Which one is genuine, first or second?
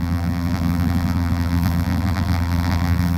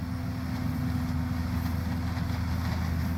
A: second